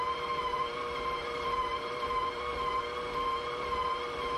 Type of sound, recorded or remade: remade